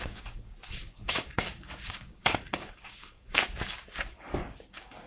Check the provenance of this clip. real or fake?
fake